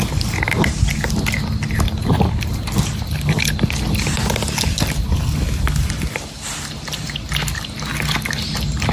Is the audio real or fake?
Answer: real